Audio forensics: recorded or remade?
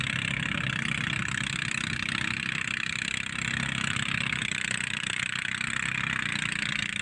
recorded